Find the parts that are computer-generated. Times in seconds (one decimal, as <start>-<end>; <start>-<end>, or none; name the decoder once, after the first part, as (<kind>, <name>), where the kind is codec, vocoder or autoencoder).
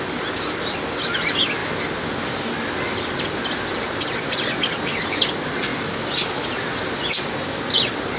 none